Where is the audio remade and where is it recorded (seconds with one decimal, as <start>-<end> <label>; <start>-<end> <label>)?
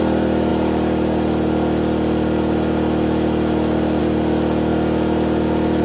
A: 0.0-5.8 recorded